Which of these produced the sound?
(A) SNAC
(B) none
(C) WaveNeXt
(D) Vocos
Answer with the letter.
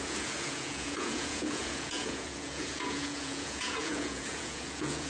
D